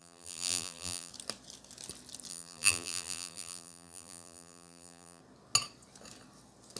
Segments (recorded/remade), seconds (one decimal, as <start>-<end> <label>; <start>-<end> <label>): 0.0-1.1 remade; 1.1-2.3 recorded; 2.3-5.2 remade; 5.2-6.8 recorded